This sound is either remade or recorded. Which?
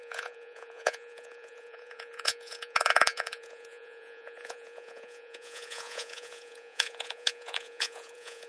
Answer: remade